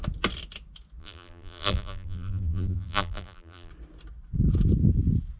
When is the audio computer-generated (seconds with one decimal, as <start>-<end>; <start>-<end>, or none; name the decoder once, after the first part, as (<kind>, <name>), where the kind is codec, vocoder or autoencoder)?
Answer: 1.0-3.7 (vocoder, BigVGAN v2)